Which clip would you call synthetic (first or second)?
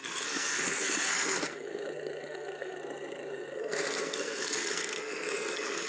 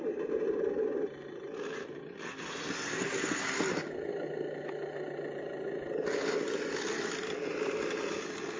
first